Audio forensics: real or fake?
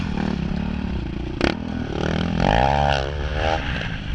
fake